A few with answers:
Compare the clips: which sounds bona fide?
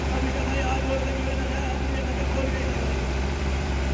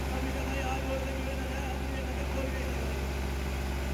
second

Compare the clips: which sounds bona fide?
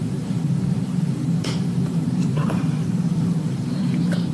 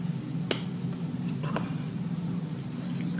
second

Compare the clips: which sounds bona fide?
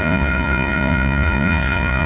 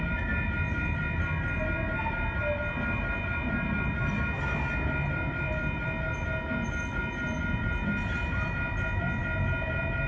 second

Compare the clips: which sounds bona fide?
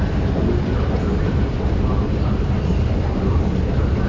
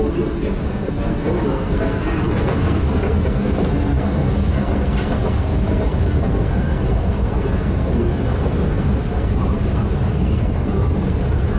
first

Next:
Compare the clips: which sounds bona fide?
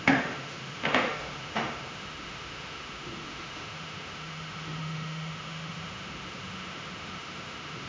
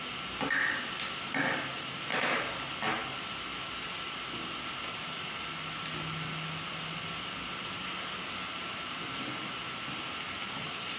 second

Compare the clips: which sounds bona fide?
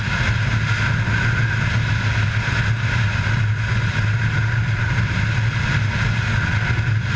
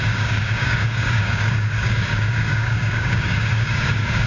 first